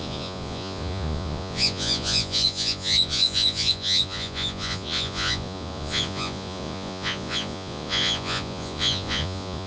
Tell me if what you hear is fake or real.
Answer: fake